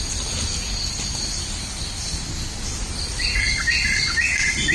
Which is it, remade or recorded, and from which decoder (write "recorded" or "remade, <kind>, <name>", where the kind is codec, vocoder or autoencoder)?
recorded